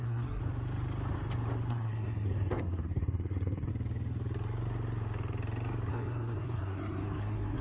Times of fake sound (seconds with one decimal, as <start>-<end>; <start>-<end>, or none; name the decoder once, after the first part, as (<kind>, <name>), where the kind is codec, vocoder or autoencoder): 0.0-0.4 (codec, SNAC); 1.7-3.7; 5.9-7.6